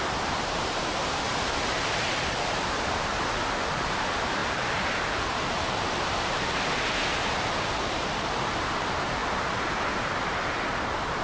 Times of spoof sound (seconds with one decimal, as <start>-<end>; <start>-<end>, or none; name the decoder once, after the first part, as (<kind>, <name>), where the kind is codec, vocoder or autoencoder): 0.0-3.1 (vocoder, BigVGAN v2); 3.7-9.2; 10.2-11.2